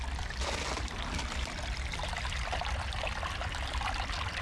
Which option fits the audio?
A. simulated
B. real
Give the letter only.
B